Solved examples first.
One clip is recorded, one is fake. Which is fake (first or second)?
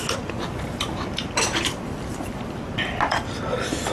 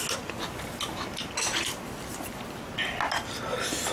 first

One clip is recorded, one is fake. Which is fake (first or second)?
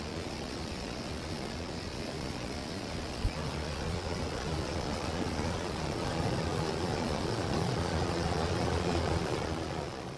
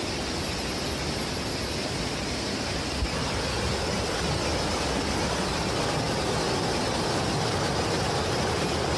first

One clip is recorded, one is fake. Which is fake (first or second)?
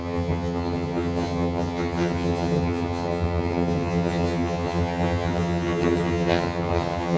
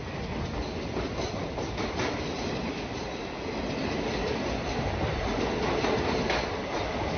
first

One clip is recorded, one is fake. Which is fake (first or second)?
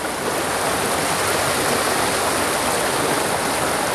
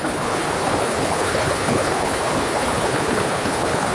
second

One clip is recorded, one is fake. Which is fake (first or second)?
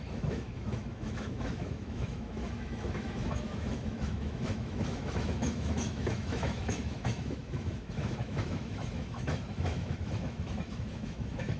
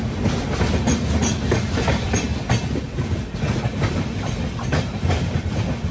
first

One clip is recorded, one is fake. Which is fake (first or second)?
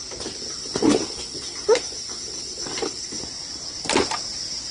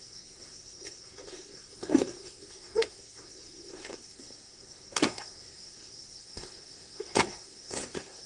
second